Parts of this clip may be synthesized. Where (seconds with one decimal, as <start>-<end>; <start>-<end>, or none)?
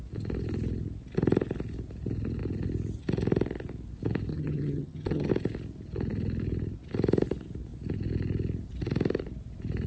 4.3-5.3